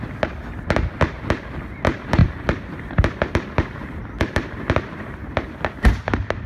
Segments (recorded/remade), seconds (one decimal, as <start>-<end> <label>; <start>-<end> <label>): 0.0-2.2 recorded; 2.2-6.1 remade; 6.1-6.5 recorded